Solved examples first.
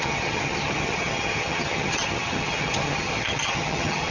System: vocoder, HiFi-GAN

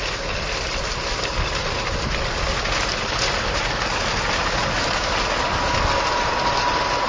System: none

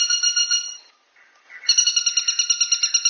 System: none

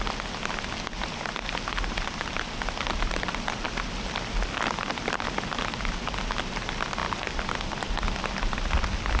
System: none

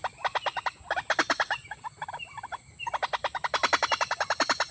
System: none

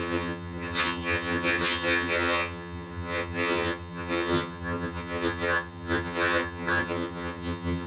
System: vocoder, HiFi-GAN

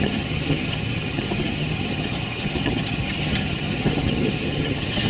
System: vocoder, HiFi-GAN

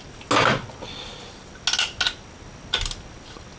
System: none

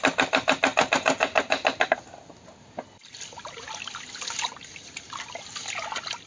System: none